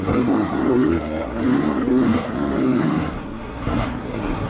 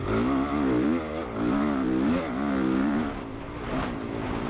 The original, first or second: second